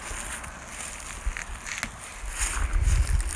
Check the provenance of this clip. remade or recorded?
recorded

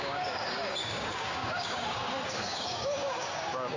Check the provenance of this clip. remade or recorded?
remade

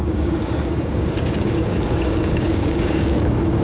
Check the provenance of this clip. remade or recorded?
remade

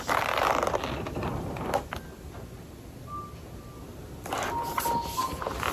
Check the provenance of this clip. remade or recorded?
recorded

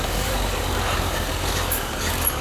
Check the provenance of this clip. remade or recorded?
remade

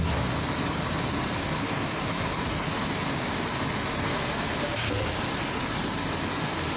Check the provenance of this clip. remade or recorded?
recorded